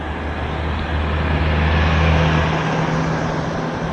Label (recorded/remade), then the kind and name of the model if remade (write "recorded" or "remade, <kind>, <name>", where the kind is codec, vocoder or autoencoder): recorded